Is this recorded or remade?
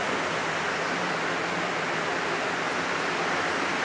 recorded